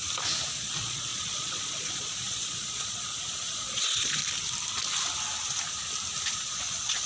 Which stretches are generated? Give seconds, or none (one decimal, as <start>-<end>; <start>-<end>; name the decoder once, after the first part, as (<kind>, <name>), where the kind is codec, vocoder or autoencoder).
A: 0.6-4.2 (vocoder, Vocos); 6.3-7.1